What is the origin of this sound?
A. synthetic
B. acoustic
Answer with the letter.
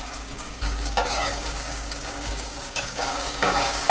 A